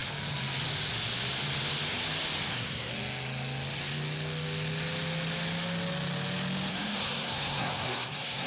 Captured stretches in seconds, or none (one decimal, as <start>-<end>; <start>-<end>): 0.0-2.5; 2.9-6.7